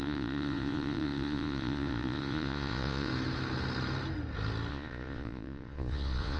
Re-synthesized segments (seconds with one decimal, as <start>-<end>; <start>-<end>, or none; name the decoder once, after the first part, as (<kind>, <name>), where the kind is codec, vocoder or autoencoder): 0.0-3.1 (vocoder, Vocos); 4.7-6.4